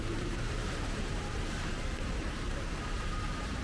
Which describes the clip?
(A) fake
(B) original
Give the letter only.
A